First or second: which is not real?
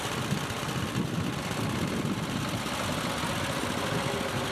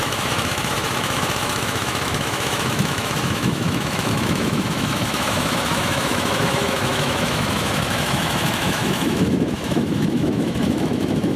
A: second